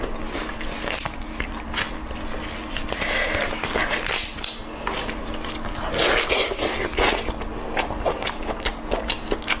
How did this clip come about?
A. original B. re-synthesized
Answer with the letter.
A